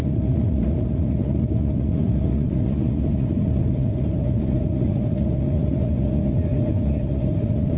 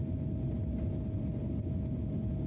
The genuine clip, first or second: second